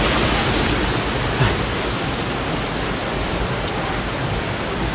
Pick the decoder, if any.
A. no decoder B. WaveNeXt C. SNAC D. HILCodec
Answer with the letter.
A